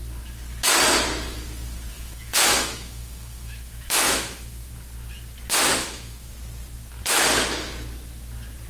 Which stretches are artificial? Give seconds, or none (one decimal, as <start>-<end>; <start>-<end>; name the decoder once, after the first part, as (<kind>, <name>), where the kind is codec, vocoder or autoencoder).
1.9-4.7 (autoencoder, DAC-VAE); 5.8-6.3